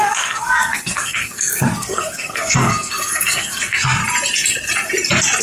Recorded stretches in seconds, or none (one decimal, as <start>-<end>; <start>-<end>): 4.0-5.4